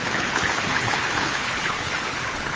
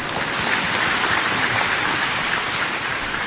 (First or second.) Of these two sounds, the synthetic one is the first